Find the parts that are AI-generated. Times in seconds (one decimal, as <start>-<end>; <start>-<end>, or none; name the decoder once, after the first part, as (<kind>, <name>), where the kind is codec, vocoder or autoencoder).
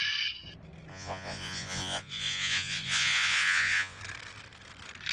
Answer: 0.9-4.0 (vocoder, Vocos)